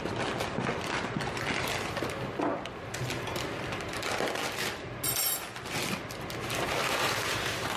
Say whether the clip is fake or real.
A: real